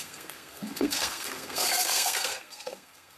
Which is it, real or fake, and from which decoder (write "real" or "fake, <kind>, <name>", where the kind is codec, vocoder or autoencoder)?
fake, codec, SNAC